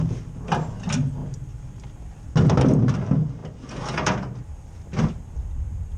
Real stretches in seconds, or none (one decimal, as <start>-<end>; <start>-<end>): 0.0-6.0